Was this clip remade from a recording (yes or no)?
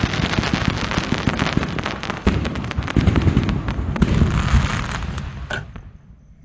no